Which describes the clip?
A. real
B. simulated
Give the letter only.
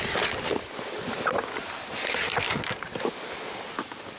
A